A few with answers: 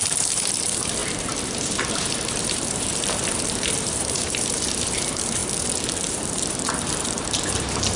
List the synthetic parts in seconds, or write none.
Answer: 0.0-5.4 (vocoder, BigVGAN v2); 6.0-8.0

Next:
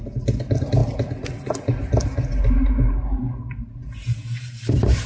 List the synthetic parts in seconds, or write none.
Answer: 0.0-0.8 (vocoder, BigVGAN v2); 1.6-5.1

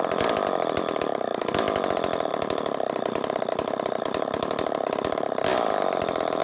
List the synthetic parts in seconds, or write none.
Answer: 2.3-6.4 (vocoder, BigVGAN v2)